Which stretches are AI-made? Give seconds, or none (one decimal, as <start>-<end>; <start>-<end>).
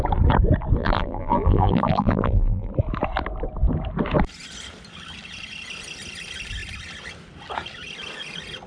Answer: 0.8-2.7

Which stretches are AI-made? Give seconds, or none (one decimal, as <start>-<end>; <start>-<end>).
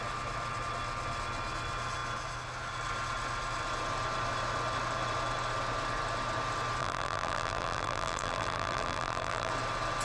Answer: 6.8-9.5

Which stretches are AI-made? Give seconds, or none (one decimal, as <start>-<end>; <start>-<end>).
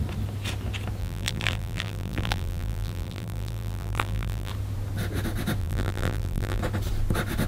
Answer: 1.0-4.5; 5.6-6.6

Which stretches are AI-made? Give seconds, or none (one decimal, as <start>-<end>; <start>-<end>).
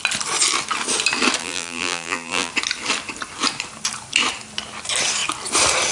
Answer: 1.4-2.5